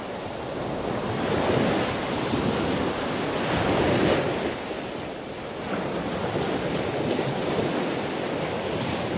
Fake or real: real